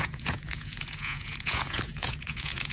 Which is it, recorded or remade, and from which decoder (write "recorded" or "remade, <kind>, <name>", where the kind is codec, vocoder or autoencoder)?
remade, vocoder, Vocos